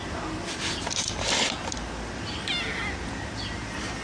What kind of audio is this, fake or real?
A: real